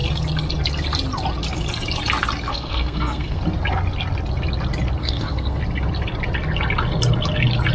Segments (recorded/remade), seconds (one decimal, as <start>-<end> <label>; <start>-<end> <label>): 0.0-2.5 recorded; 2.5-3.4 remade; 3.4-5.0 recorded; 5.0-5.6 remade; 5.6-7.7 recorded